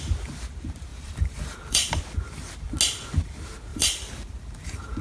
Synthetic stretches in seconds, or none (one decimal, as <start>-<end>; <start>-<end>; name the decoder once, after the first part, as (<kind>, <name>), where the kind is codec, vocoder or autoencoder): 0.9-2.0 (vocoder, BigVGAN v2); 3.7-5.0